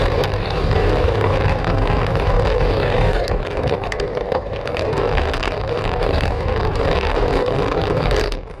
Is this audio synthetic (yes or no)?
yes